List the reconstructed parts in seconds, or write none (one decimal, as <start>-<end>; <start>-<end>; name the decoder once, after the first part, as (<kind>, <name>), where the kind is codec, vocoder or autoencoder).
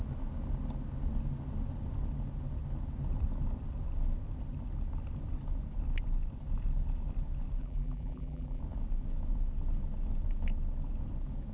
7.6-8.6 (vocoder, BigVGAN v2)